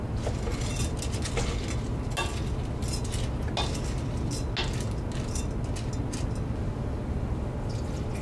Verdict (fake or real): real